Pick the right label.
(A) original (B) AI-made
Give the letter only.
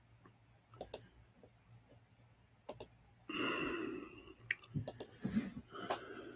A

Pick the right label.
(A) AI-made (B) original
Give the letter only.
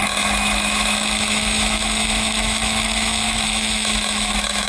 A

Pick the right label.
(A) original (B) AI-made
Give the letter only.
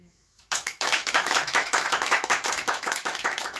B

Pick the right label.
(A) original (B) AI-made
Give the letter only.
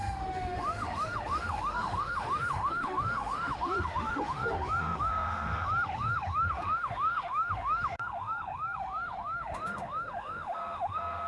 B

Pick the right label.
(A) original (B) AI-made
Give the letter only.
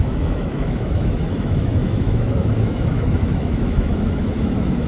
B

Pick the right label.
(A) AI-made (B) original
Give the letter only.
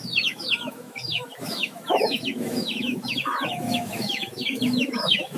A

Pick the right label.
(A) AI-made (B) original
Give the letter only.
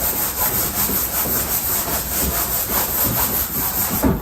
B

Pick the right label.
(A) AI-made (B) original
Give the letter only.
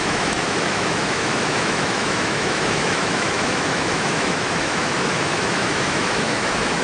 A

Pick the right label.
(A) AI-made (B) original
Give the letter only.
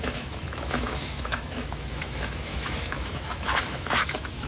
A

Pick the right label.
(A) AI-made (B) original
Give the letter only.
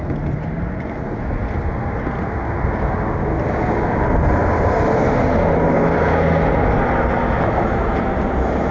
B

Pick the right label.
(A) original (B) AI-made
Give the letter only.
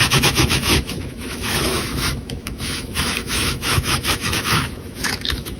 B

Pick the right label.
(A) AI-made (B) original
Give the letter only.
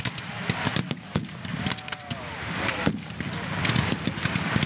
B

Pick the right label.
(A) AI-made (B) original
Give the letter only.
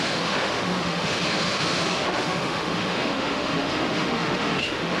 A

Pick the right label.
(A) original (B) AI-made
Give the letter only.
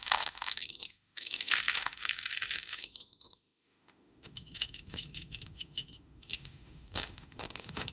B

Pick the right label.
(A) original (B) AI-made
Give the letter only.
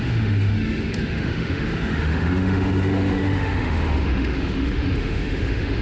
B